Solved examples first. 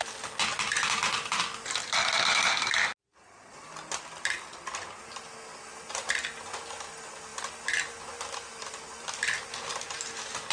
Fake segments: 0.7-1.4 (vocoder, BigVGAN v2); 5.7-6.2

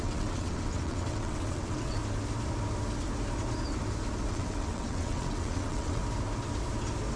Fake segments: 0.0-2.0 (vocoder, WaveNeXt); 4.3-6.0

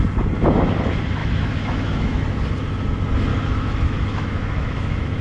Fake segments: 1.2-2.2 (autoencoder, DAC-VAE); 3.3-5.2

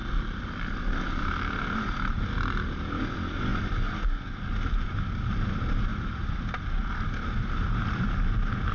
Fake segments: none

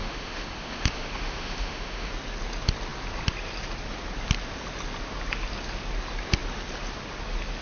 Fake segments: 0.0-2.1 (autoencoder, DAC-VAE)

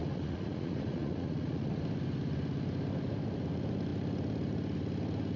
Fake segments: 0.0-1.8 (vocoder, Vocos)

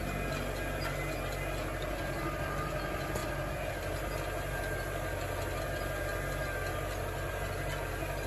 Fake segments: none

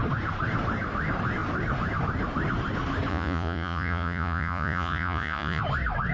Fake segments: 3.1-5.6 (vocoder, Vocos)